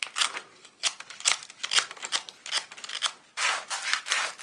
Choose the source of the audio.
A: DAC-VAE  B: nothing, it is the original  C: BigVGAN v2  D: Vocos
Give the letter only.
B